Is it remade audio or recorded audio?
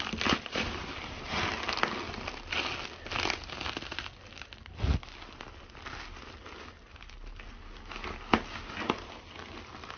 recorded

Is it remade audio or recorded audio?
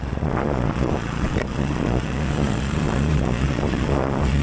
remade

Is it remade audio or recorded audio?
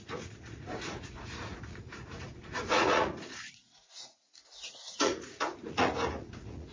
remade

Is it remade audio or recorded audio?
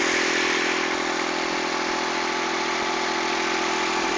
recorded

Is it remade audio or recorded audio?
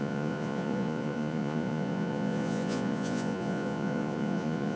remade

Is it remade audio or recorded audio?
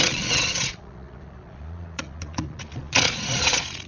remade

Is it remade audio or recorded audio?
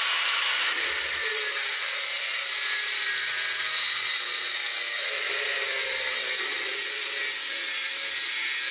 recorded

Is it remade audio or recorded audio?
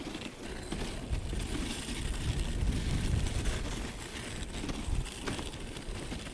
recorded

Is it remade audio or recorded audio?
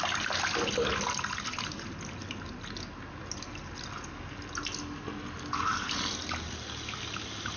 recorded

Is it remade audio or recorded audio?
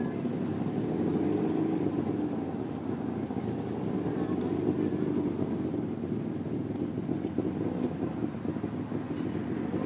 recorded